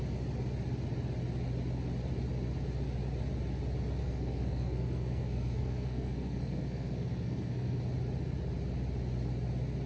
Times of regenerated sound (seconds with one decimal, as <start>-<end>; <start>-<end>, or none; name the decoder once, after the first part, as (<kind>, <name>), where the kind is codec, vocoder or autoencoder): 4.0-7.8 (codec, SNAC)